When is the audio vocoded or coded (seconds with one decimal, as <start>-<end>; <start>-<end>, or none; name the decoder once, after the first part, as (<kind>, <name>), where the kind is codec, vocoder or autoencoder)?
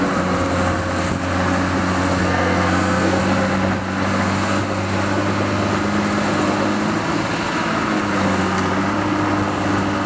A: 2.2-3.2 (codec, SNAC)